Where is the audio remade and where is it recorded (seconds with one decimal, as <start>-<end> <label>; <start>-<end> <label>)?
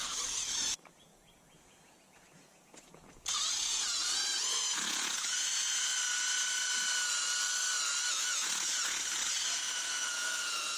0.0-5.9 remade; 5.9-8.1 recorded; 8.1-10.8 remade